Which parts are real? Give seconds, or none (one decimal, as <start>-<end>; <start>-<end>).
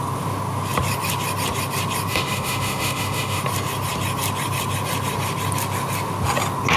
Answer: 0.0-2.1; 3.4-6.8